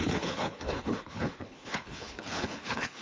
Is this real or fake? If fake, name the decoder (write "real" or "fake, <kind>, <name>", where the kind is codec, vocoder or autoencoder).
fake, codec, HILCodec